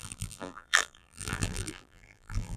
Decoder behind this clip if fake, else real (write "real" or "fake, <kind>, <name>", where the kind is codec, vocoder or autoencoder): fake, vocoder, BigVGAN v2